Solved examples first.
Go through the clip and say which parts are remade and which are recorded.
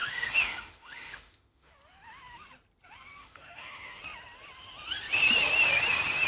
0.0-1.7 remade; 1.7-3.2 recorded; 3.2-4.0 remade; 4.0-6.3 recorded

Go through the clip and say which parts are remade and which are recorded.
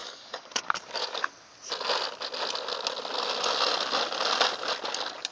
0.0-1.3 remade; 1.3-5.3 recorded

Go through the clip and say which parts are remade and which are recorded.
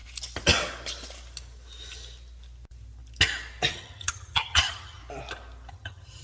0.0-3.7 recorded; 3.7-5.0 remade; 5.0-5.7 recorded; 5.7-6.2 remade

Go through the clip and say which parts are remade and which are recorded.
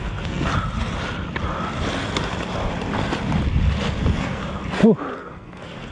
0.0-0.5 remade; 0.5-4.0 recorded; 4.0-4.4 remade; 4.4-5.2 recorded; 5.2-5.9 remade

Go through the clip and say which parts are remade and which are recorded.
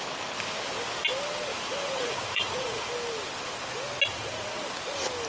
0.0-1.5 recorded; 1.5-2.9 remade; 2.9-4.1 recorded; 4.1-4.6 remade; 4.6-5.3 recorded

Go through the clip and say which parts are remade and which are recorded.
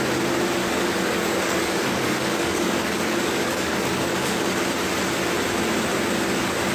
0.0-0.6 recorded; 0.6-4.6 remade; 4.6-6.7 recorded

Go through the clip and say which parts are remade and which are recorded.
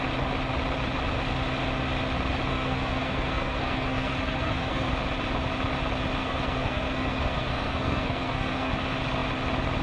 0.0-2.5 recorded; 2.5-4.9 remade; 4.9-6.2 recorded; 6.2-8.7 remade; 8.7-9.8 recorded